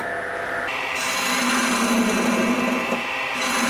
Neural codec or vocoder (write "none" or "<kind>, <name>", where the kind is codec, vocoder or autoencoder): none